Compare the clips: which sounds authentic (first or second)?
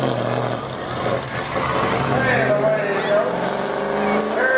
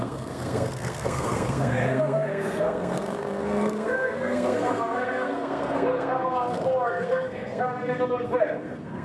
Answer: first